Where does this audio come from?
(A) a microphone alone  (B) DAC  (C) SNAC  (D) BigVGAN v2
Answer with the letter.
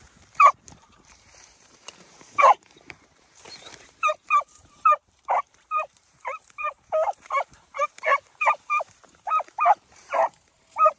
D